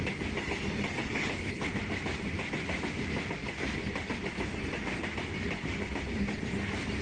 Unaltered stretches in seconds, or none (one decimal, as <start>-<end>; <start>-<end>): 0.0-1.0; 1.6-7.0